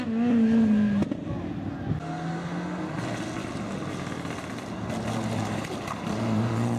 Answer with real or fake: real